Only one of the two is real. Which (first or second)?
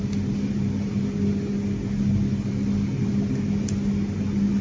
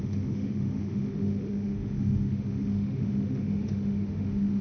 first